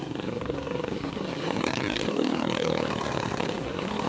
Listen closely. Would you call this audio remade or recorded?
remade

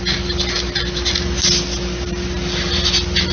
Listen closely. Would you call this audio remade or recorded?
recorded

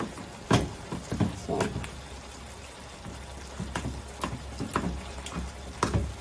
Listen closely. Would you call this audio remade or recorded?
recorded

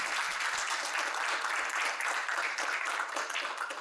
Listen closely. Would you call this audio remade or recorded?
recorded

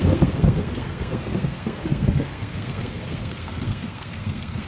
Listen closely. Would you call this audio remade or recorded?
remade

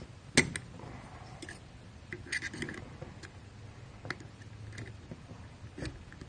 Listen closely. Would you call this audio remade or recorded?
recorded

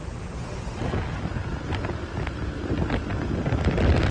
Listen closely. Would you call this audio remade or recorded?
recorded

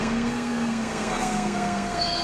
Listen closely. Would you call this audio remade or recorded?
remade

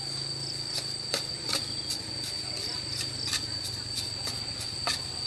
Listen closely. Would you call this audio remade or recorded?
recorded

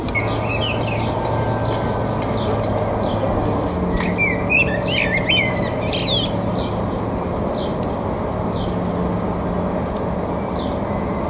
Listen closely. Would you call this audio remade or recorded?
recorded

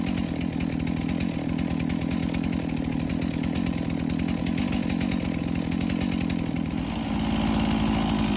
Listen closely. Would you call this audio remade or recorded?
recorded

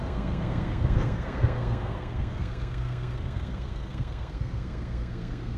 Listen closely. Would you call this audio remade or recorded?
remade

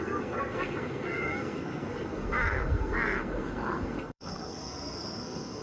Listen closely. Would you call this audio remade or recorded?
remade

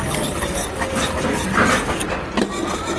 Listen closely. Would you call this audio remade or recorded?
recorded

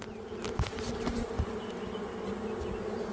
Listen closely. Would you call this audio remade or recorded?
recorded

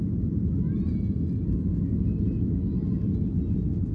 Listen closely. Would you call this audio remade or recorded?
recorded